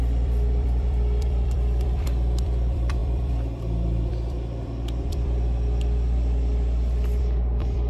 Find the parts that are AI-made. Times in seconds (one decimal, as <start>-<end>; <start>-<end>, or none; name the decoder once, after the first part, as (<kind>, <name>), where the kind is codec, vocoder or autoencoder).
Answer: 0.0-7.9 (vocoder, BigVGAN v2)